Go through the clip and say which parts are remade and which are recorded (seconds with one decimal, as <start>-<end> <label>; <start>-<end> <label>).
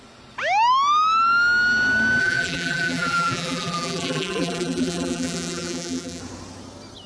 0.0-2.2 recorded; 2.2-6.2 remade; 6.2-7.1 recorded